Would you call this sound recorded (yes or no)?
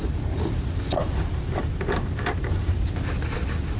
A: yes